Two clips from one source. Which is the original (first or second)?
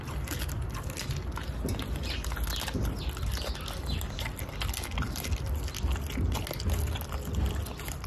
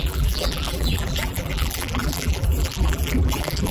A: first